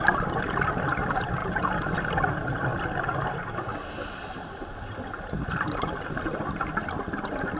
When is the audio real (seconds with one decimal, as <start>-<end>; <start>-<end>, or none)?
0.0-7.6